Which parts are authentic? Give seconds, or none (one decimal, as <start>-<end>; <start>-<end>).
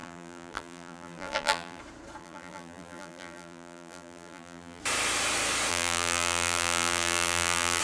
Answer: 1.8-2.2; 4.8-5.7